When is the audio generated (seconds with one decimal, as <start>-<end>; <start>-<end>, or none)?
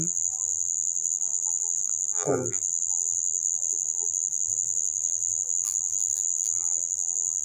0.0-7.4